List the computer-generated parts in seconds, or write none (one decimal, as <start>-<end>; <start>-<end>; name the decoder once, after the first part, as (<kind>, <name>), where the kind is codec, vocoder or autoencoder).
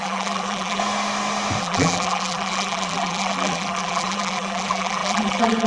0.0-0.8 (vocoder, BigVGAN v2); 1.6-5.7